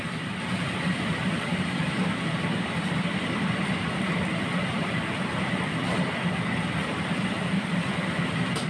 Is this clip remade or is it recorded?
remade